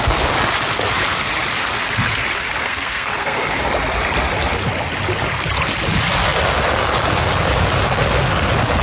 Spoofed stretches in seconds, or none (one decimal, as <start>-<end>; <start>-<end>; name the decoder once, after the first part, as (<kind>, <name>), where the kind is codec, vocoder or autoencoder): 2.6-3.6 (codec, SNAC)

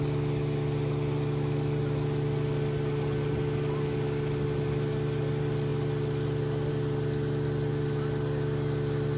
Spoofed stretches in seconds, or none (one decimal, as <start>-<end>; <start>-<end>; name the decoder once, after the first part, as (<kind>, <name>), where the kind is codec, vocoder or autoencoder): none

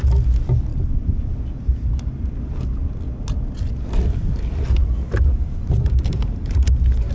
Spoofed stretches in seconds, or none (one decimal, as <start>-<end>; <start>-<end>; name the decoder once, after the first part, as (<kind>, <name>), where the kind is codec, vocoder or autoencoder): 4.8-7.1 (vocoder, BigVGAN v2)

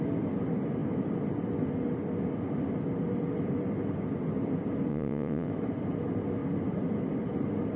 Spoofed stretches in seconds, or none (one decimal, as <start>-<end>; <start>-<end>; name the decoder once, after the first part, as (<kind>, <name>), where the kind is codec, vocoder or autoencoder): 4.9-5.5 (vocoder, WaveNeXt)

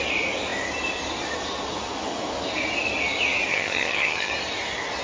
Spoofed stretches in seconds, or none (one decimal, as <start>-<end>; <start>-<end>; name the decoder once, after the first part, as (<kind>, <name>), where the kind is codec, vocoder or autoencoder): 3.5-4.3 (vocoder, HiFi-GAN)

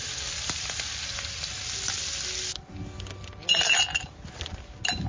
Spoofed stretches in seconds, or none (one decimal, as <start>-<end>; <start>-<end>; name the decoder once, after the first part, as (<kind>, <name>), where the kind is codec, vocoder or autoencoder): none

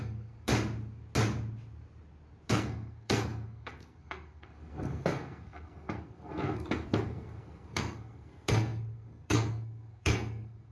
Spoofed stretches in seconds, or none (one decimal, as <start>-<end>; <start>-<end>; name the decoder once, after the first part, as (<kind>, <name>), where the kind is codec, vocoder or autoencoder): 0.0-0.5 (codec, SNAC); 2.5-10.7

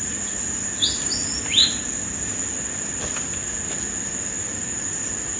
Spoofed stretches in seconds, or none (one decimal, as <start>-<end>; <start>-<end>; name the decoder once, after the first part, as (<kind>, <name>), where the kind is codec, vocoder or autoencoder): none